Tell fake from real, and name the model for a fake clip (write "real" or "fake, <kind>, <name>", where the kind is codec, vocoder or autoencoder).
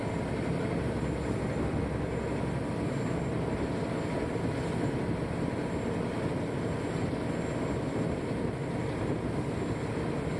real